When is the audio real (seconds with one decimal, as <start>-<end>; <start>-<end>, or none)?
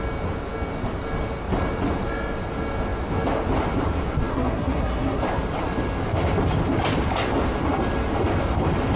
0.0-4.3; 5.2-9.0